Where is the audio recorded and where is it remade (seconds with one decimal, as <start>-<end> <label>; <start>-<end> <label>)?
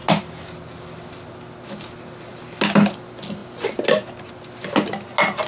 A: 0.0-5.5 recorded